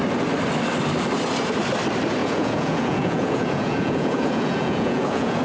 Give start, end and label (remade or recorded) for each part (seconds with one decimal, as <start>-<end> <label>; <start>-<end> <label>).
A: 0.0-2.2 recorded; 2.2-5.4 remade